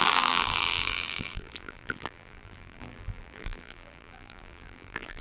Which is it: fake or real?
fake